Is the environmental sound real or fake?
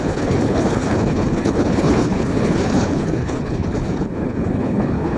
fake